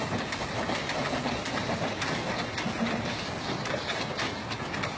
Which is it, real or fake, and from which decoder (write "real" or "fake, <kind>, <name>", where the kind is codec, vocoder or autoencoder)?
real